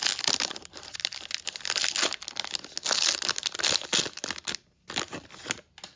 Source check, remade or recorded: recorded